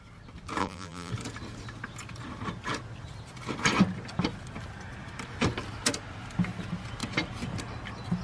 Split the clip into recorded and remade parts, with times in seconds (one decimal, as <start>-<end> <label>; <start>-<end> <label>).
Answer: 0.0-0.6 recorded; 0.6-1.1 remade; 1.1-8.2 recorded